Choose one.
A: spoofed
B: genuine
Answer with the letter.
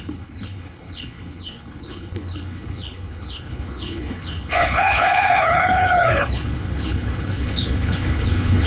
A